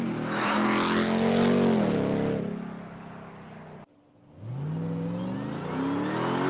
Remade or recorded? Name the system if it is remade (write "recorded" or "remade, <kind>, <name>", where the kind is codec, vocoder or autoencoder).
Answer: recorded